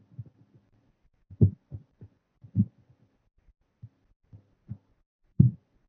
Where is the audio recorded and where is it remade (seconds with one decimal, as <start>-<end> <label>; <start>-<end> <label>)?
0.0-0.6 recorded; 0.6-3.0 remade; 3.0-4.9 recorded; 4.9-5.9 remade